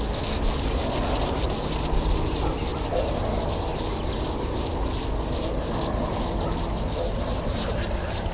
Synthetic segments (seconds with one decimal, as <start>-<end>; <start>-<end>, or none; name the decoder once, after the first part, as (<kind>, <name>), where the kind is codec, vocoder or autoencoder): 2.7-3.2 (vocoder, BigVGAN v2)